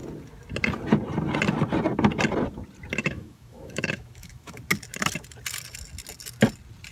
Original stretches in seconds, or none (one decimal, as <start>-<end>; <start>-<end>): 0.0-3.0; 4.6-6.9